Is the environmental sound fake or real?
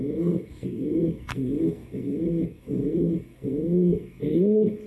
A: fake